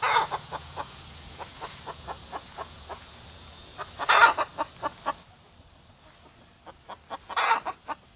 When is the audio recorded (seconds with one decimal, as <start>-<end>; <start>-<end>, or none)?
3.7-8.2